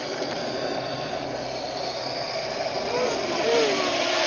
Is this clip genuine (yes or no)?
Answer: no